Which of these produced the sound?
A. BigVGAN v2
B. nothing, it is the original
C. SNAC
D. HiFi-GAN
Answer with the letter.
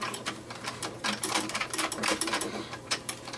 A